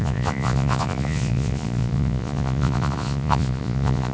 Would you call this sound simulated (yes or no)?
yes